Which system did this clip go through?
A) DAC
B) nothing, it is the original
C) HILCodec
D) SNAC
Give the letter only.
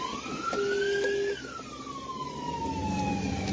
B